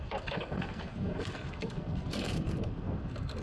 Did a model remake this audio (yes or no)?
yes